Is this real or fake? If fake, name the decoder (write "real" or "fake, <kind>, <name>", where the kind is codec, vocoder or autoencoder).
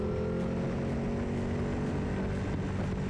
real